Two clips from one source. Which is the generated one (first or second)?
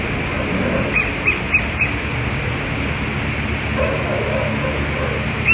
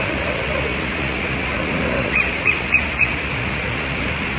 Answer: second